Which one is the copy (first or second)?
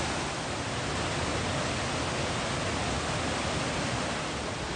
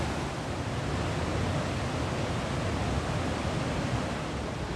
second